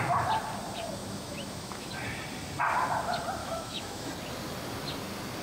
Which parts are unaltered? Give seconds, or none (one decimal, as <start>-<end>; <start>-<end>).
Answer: 0.0-1.0; 1.9-3.4; 4.1-5.4